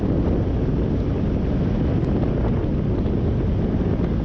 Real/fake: real